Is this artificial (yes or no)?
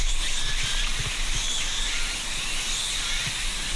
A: no